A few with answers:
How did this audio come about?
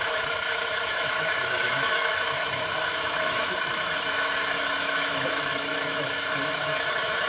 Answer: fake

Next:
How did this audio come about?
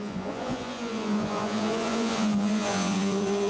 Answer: fake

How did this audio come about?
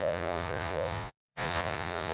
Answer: fake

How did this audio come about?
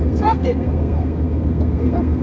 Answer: fake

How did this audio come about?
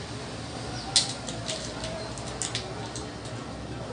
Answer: real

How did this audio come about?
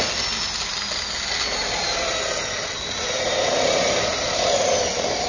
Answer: real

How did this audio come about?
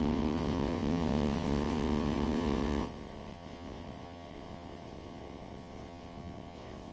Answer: fake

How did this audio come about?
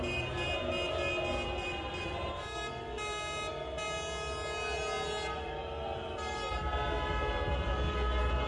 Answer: real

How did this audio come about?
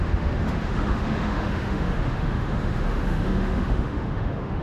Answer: fake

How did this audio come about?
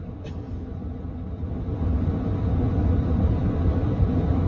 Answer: real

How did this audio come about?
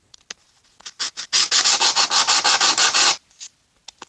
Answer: real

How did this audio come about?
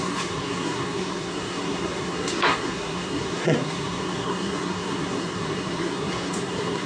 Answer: fake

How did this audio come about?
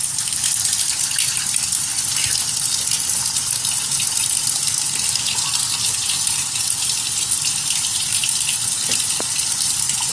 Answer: real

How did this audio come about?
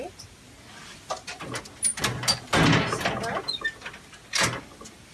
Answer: real